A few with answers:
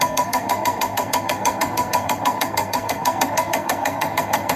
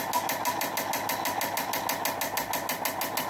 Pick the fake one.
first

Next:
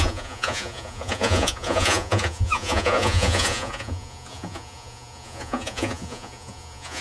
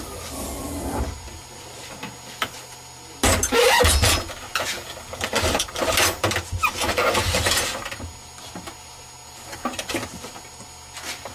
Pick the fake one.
first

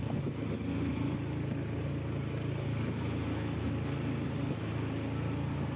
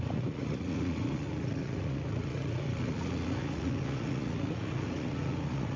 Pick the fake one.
second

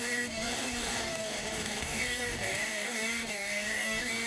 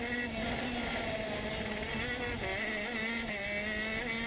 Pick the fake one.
first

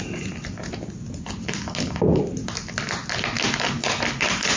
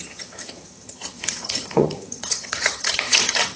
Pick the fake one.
second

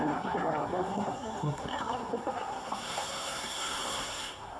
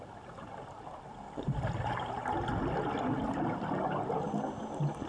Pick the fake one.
first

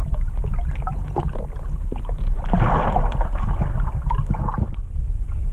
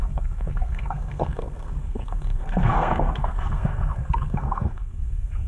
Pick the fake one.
second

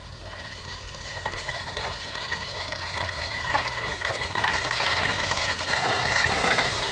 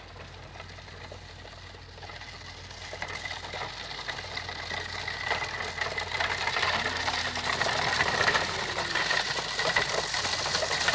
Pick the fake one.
first